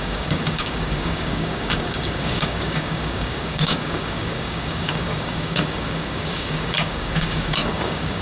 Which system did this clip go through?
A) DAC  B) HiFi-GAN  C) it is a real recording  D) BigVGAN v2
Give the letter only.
A